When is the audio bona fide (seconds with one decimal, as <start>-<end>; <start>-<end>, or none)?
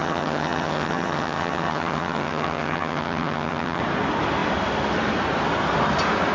3.8-6.3